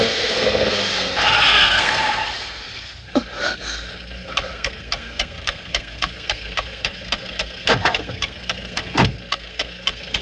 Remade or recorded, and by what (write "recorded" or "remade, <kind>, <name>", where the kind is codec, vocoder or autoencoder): remade, codec, SNAC